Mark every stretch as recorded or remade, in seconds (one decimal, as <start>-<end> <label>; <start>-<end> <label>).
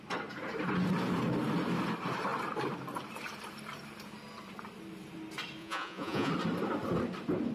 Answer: 0.0-5.6 recorded; 5.6-6.3 remade; 6.3-7.5 recorded